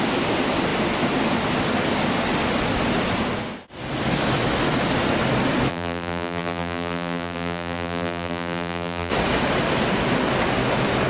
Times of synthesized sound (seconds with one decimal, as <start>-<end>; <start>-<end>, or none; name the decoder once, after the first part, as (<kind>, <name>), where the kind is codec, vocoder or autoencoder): 5.7-9.1 (vocoder, BigVGAN v2)